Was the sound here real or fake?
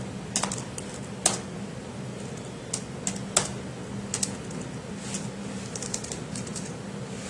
real